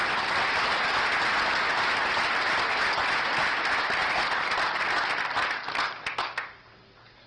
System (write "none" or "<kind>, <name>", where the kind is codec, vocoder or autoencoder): none